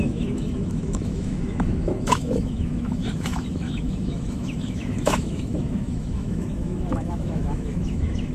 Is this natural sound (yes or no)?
no